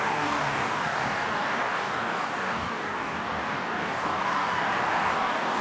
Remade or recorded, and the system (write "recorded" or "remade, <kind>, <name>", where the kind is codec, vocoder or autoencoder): remade, codec, DAC